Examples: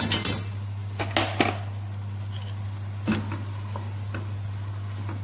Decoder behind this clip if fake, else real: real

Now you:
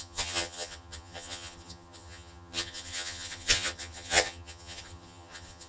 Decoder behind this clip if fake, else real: fake, vocoder, HiFi-GAN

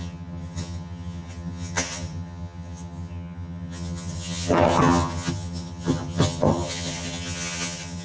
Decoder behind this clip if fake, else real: fake, vocoder, HiFi-GAN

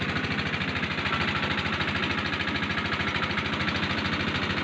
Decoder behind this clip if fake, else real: real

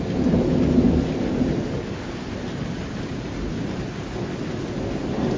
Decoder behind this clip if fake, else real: real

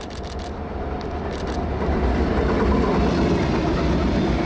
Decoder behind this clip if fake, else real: real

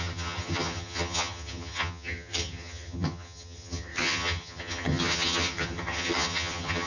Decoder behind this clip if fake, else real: fake, vocoder, HiFi-GAN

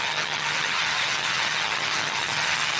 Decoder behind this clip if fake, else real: fake, vocoder, HiFi-GAN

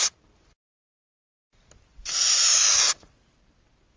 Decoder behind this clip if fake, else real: real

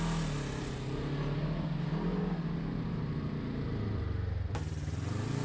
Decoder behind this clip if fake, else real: real